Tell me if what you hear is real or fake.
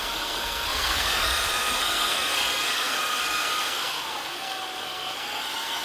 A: fake